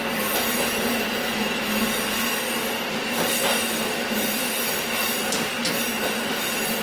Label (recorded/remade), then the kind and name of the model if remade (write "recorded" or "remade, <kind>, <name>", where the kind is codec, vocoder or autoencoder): recorded